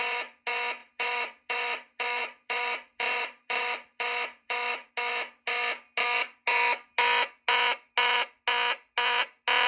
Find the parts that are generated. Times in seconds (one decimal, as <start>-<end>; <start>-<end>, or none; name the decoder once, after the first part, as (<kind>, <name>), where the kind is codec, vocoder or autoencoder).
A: 0.8-4.9 (vocoder, BigVGAN v2)

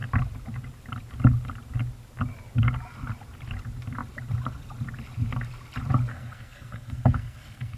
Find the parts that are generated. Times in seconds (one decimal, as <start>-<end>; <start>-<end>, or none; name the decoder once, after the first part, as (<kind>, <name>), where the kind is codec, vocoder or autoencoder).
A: 6.1-7.8 (codec, SNAC)

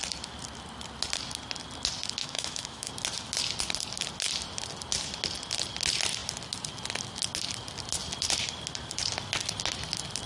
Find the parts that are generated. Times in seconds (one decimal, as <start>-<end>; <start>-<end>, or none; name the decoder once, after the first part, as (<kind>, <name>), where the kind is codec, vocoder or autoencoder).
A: 2.2-2.9 (autoencoder, DAC-VAE)

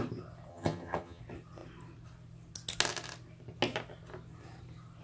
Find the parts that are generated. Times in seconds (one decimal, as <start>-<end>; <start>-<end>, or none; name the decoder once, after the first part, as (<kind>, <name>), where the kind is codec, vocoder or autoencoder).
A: 0.5-1.2 (vocoder, HiFi-GAN)